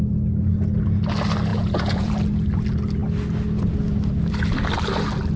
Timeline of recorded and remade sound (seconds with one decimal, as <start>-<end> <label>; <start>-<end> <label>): 0.0-1.5 recorded; 1.5-2.1 remade; 2.1-5.4 recorded